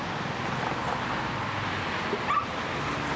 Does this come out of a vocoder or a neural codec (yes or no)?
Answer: no